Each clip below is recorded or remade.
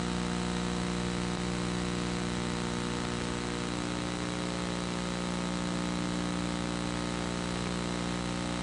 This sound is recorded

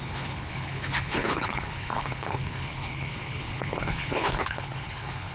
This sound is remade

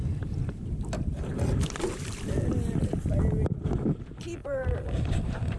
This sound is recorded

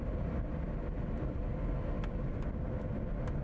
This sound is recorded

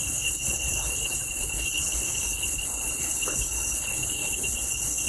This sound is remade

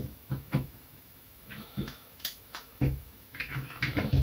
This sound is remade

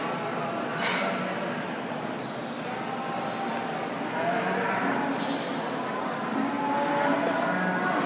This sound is recorded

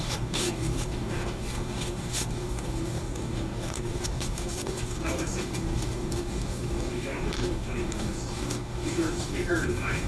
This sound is remade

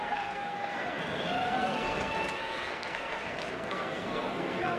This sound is remade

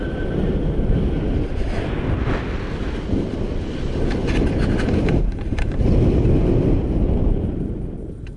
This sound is recorded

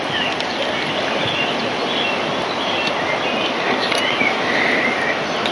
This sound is recorded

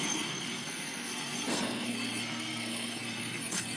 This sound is remade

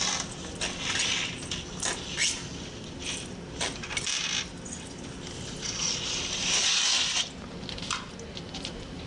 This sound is recorded